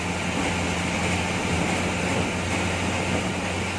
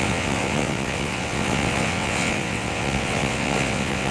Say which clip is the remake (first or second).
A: second